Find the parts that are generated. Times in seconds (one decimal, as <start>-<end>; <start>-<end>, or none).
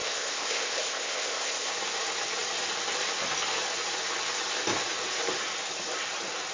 0.0-1.7